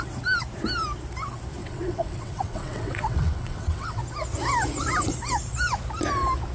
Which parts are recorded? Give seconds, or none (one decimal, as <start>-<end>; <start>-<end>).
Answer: 0.0-1.6; 4.0-6.5